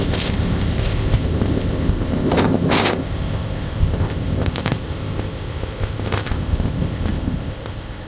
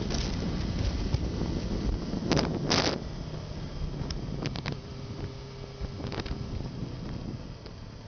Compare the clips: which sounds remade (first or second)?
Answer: first